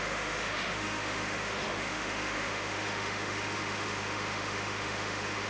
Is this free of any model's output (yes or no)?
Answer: no